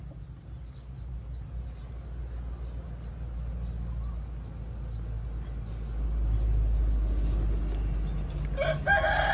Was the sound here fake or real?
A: real